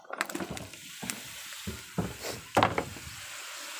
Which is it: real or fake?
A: real